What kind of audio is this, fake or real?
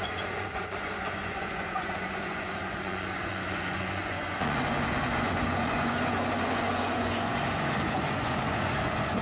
fake